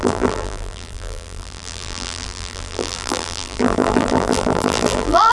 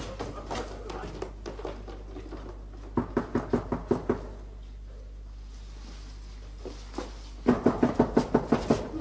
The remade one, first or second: first